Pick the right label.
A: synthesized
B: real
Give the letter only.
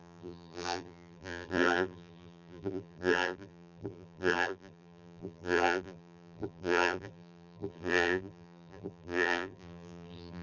A